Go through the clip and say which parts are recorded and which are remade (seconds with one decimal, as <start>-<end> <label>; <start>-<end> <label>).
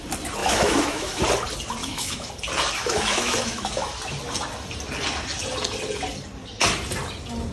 0.0-0.4 recorded; 0.4-1.2 remade; 1.2-1.8 recorded; 1.8-2.3 remade; 2.3-2.8 recorded; 2.8-3.9 remade; 3.9-7.5 recorded